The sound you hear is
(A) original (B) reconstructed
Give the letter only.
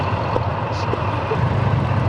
A